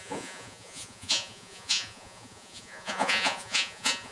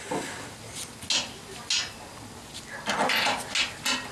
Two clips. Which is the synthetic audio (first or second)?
first